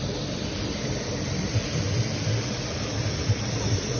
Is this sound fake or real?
fake